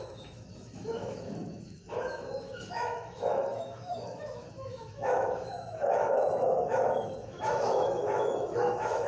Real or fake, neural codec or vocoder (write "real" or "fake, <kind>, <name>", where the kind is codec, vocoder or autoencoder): fake, autoencoder, DAC-VAE